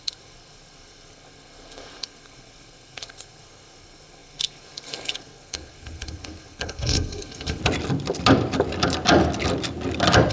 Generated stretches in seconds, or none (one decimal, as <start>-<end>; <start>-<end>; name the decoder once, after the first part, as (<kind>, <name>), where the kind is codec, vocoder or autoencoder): 0.0-7.6 (codec, SNAC)